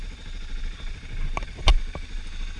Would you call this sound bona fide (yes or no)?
yes